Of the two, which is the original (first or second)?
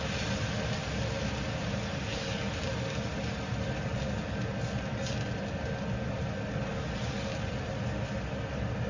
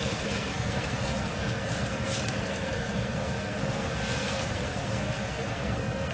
first